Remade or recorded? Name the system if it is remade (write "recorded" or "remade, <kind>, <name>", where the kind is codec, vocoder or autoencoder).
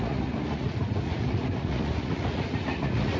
remade, vocoder, Vocos